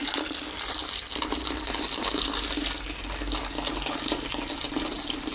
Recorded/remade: recorded